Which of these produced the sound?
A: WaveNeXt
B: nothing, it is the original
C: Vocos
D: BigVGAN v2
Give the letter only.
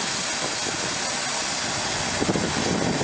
B